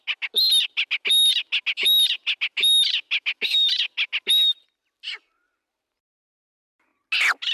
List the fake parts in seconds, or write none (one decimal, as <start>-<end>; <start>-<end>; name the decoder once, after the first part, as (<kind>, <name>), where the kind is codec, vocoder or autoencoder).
none